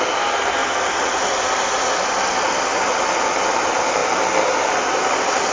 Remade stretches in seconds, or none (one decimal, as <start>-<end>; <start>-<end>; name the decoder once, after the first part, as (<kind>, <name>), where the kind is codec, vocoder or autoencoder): none